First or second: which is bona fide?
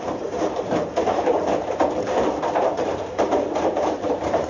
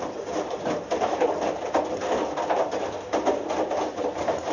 second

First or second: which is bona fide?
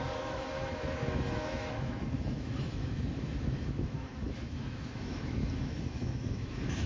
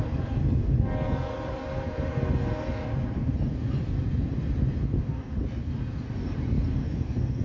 second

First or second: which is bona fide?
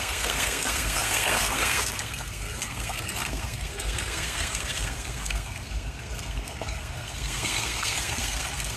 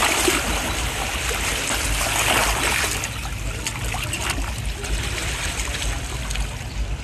second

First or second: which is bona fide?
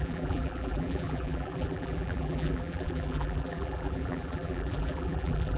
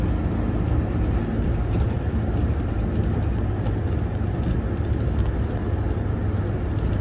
second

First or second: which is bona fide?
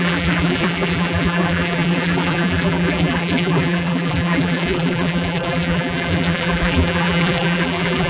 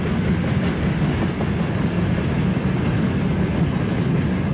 second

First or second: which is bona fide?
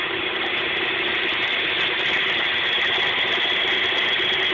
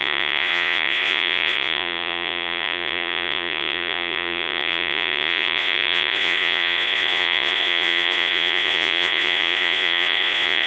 first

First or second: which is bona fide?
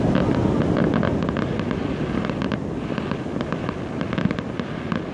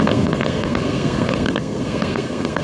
first